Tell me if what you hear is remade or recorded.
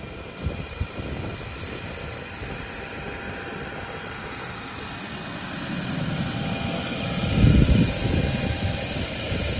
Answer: remade